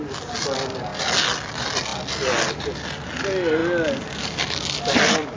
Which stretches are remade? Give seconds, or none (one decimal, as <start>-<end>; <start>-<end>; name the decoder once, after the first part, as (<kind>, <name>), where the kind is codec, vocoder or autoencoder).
none